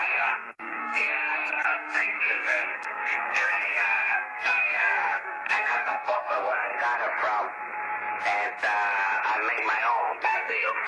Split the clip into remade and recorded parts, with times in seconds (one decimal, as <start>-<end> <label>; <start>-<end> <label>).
0.0-6.7 remade; 6.7-9.9 recorded; 9.9-10.9 remade